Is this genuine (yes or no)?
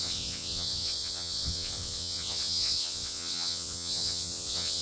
no